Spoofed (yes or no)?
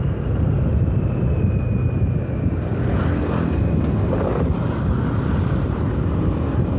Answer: no